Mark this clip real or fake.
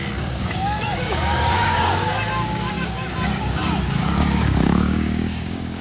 fake